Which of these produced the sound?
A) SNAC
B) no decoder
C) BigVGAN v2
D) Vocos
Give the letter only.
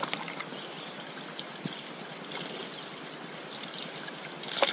B